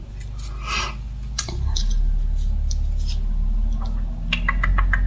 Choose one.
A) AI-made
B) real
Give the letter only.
B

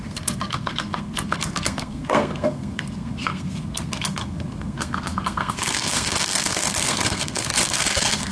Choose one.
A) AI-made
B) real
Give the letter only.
A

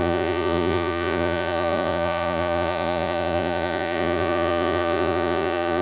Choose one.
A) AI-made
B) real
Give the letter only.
A